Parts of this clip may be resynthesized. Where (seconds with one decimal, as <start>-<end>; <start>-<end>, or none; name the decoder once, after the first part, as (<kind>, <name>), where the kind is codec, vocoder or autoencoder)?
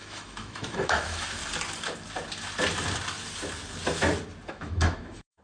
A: 0.0-1.4 (autoencoder, DAC-VAE); 4.5-5.4